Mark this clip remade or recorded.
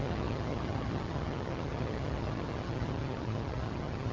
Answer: remade